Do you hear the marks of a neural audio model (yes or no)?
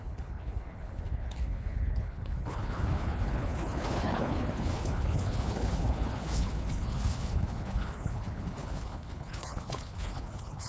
yes